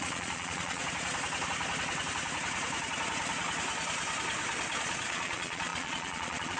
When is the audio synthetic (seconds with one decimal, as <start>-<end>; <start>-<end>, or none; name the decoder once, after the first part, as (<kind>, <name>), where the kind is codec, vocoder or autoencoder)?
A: 0.0-0.8 (vocoder, Vocos); 4.8-6.6